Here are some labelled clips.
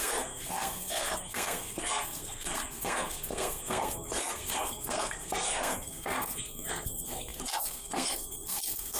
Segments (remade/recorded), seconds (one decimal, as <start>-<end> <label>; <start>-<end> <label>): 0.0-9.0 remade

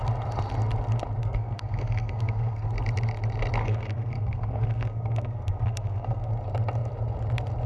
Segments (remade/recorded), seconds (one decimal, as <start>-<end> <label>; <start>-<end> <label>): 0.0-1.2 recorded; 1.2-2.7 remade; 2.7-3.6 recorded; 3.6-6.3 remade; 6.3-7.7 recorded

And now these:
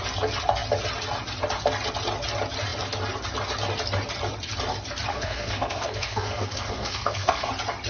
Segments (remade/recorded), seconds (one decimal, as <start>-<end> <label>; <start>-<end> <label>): 0.0-5.1 recorded; 5.1-7.5 remade; 7.5-7.9 recorded

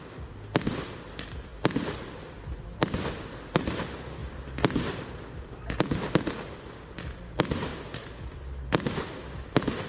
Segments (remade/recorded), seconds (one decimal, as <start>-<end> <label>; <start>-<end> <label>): 0.0-9.9 recorded

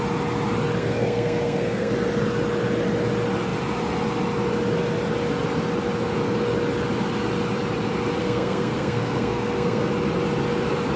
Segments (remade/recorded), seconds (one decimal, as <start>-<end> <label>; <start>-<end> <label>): 0.0-0.8 recorded; 0.8-1.9 remade; 1.9-8.2 recorded; 8.2-9.9 remade; 9.9-11.0 recorded

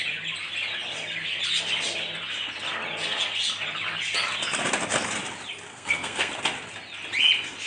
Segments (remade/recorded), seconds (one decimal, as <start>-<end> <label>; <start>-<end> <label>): 0.0-5.7 recorded; 5.7-6.3 remade; 6.3-7.7 recorded

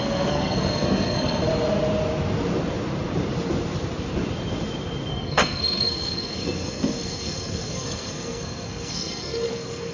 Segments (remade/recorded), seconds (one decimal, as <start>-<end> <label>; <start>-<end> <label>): 0.0-1.5 remade; 1.5-5.1 recorded; 5.1-9.9 remade